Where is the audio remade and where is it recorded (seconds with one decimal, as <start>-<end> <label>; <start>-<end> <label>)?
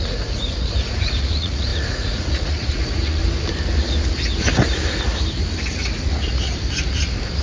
0.0-3.2 remade; 3.2-7.4 recorded